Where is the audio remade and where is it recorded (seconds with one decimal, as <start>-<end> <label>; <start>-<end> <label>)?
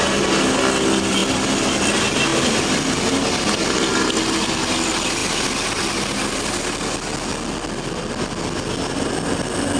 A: 0.0-9.8 recorded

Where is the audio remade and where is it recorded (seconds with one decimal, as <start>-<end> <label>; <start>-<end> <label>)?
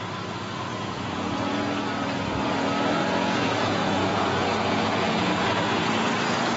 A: 0.0-0.7 recorded; 0.7-1.5 remade; 1.5-3.0 recorded; 3.0-5.9 remade; 5.9-6.6 recorded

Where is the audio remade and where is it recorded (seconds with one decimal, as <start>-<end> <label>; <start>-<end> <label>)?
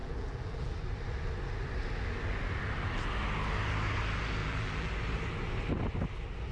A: 0.0-0.7 remade; 0.7-4.4 recorded; 4.4-4.9 remade; 4.9-6.5 recorded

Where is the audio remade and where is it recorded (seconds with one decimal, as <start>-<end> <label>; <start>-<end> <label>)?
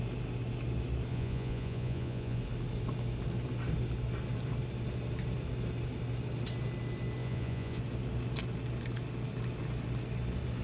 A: 0.0-1.1 recorded; 1.1-2.4 remade; 2.4-7.2 recorded; 7.2-7.8 remade; 7.8-10.6 recorded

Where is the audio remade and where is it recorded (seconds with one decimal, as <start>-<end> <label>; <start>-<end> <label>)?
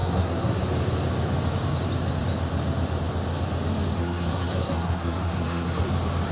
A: 0.0-0.6 remade; 0.6-4.0 recorded; 4.0-5.8 remade; 5.8-6.3 recorded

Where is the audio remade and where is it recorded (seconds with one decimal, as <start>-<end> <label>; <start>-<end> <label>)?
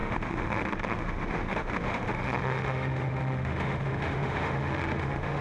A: 0.0-5.4 remade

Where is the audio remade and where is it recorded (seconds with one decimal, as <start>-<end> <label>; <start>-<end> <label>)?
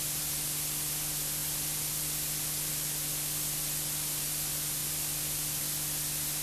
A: 0.0-6.4 recorded